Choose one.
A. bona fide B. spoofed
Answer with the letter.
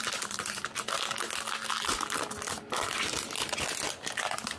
A